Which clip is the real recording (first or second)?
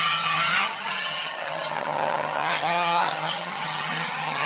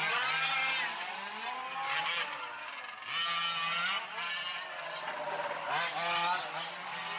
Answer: second